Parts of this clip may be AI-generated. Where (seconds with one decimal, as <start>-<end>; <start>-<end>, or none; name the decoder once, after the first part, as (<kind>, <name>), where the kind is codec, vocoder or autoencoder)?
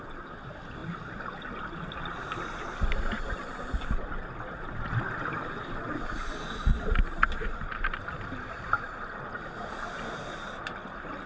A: none